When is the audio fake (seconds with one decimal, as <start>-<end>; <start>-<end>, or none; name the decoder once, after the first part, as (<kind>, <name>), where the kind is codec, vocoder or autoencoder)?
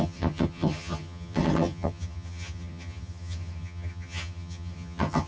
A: 0.0-5.3 (vocoder, HiFi-GAN)